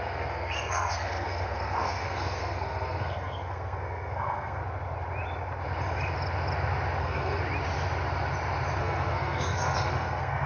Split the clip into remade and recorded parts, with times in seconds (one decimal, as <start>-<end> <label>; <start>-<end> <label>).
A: 0.0-4.6 remade; 4.6-7.0 recorded; 7.0-7.4 remade; 7.4-8.8 recorded; 8.8-10.5 remade